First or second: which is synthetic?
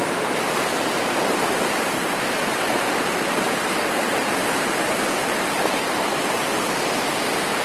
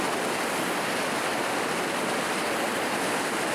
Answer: first